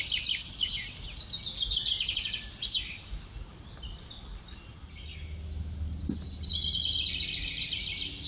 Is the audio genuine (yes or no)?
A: yes